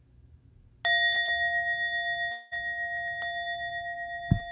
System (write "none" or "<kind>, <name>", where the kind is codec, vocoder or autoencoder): none